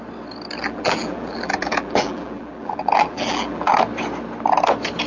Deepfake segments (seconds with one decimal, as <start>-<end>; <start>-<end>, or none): 0.6-3.7